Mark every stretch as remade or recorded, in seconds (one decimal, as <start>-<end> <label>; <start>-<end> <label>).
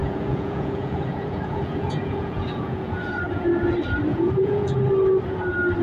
0.0-3.5 remade; 3.5-4.1 recorded; 4.1-4.9 remade; 4.9-5.8 recorded